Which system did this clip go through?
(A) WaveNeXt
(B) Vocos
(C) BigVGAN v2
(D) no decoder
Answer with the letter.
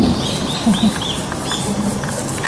D